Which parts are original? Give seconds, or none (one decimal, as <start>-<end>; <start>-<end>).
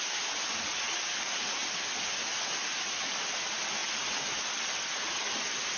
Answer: 0.0-5.8